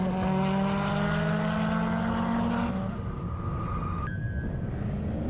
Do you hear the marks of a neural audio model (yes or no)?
no